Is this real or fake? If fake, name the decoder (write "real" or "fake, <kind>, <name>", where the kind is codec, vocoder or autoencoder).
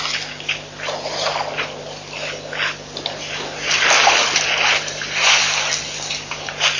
real